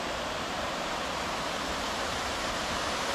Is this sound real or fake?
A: fake